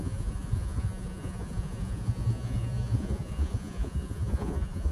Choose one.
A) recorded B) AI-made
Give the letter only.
B